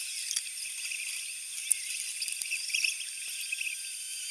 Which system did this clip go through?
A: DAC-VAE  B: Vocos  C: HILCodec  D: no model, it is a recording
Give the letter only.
D